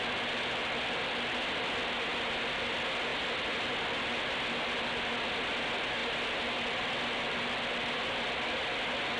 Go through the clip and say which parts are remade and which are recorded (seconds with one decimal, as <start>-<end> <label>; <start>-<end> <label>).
0.0-9.2 recorded